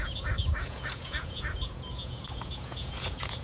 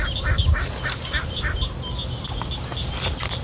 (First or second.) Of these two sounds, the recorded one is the second